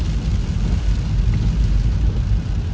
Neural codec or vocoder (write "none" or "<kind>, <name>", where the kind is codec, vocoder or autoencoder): none